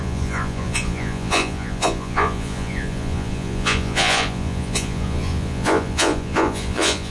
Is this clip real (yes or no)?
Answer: no